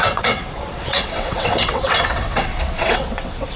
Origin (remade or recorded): remade